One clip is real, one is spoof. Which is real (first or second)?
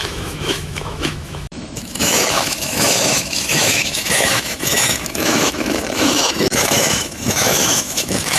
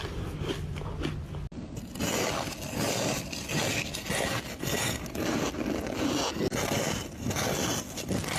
second